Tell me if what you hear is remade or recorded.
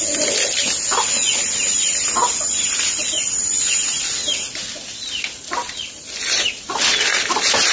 recorded